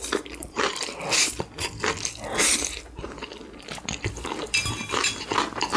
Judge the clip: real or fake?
fake